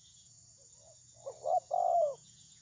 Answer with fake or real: fake